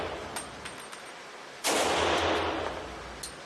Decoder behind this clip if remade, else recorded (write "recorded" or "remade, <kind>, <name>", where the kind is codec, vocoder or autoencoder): recorded